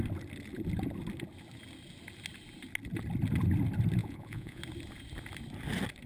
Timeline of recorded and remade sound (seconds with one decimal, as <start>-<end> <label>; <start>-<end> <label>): 0.0-4.0 recorded; 4.0-4.6 remade; 4.6-6.1 recorded